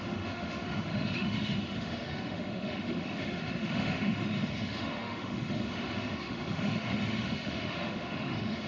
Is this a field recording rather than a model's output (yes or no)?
no